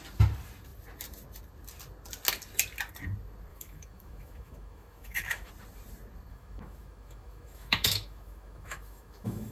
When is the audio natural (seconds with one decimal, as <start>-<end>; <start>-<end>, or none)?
0.0-3.5; 5.5-6.3